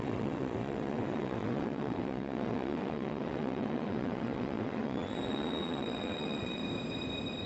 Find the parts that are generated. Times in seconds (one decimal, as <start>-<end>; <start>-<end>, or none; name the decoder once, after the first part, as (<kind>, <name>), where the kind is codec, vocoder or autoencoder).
0.0-6.6 (vocoder, WaveNeXt)